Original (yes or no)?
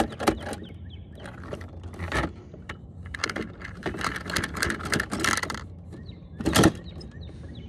yes